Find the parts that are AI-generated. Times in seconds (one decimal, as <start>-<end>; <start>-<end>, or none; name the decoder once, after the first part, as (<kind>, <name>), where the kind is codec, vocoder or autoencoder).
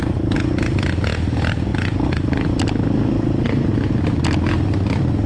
none